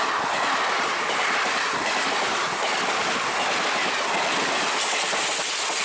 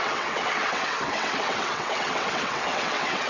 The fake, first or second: second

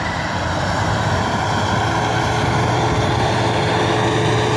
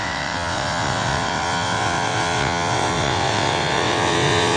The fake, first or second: second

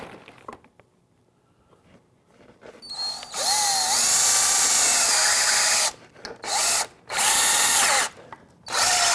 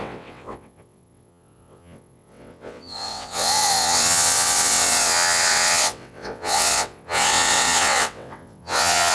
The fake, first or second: second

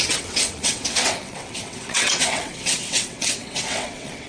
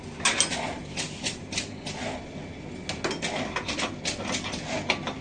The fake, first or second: first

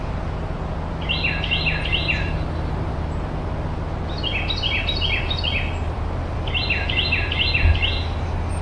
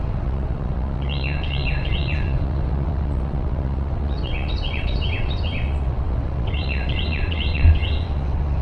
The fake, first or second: second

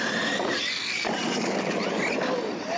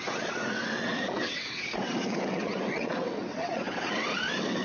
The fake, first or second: second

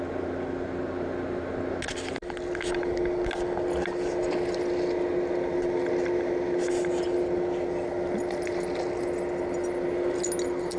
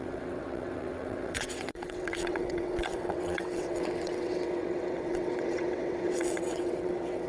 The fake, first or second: second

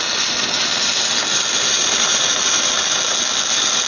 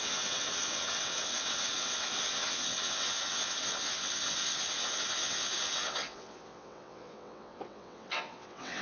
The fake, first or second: second